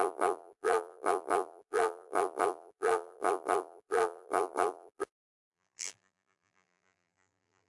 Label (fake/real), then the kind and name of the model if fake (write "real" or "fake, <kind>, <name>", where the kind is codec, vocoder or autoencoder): fake, vocoder, BigVGAN v2